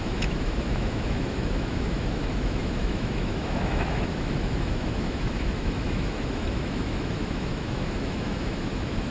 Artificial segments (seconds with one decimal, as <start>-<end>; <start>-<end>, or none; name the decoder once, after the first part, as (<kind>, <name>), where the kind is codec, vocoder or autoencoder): 0.0-9.1 (autoencoder, DAC-VAE)